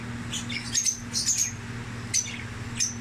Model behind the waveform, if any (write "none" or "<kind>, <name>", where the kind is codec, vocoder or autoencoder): none